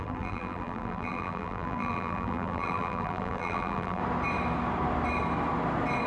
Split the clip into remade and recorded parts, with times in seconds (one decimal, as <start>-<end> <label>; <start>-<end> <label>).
0.0-4.0 remade; 4.0-6.1 recorded